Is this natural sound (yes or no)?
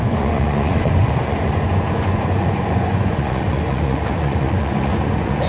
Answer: no